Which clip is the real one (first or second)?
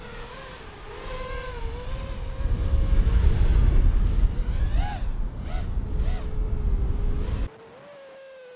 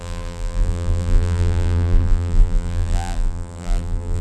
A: first